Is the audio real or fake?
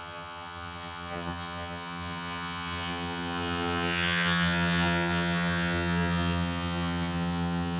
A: fake